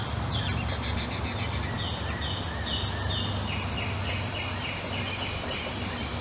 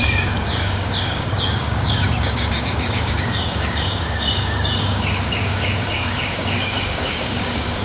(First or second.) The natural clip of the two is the first